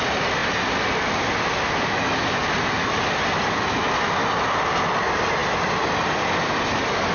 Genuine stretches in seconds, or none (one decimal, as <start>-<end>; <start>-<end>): 0.0-7.1